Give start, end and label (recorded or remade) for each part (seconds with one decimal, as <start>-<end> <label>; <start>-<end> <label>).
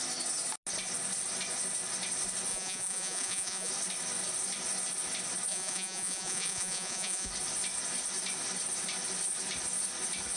0.0-2.5 recorded; 2.5-3.7 remade; 3.7-5.5 recorded; 5.5-7.3 remade; 7.3-10.4 recorded